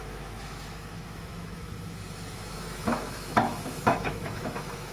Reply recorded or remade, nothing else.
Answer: remade